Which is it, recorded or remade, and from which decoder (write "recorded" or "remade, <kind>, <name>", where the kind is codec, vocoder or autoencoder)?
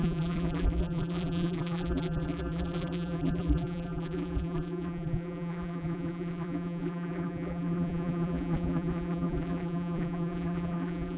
remade, vocoder, BigVGAN v2